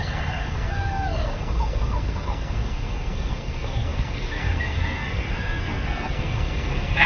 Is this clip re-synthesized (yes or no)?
yes